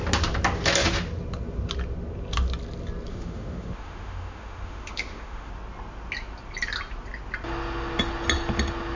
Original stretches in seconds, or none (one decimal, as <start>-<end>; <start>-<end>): 0.0-3.1; 5.5-9.0